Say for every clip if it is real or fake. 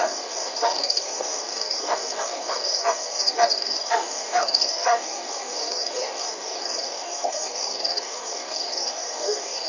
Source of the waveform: fake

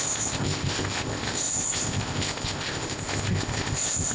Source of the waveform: fake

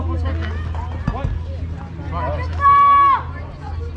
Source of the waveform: real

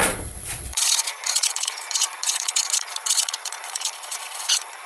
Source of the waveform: fake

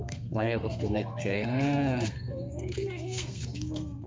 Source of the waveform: fake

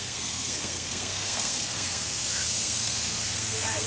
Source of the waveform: fake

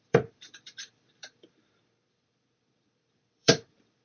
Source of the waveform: fake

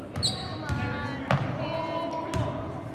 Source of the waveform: real